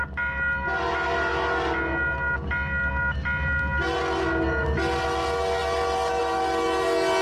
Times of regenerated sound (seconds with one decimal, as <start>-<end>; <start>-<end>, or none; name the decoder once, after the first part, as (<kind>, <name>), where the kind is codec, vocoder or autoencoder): none